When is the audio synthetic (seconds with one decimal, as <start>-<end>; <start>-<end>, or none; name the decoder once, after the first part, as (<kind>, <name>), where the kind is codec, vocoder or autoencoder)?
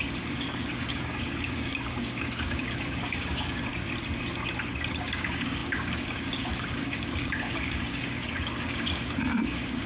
0.0-3.7 (codec, DAC); 4.9-9.9